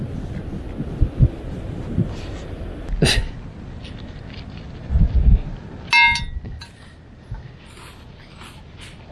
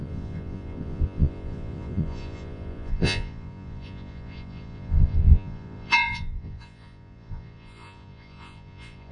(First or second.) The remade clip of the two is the second